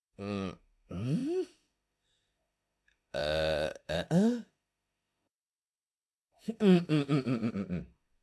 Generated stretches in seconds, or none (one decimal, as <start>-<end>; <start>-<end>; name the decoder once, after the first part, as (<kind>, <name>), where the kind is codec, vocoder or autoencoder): 0.0-8.2 (autoencoder, DAC-VAE)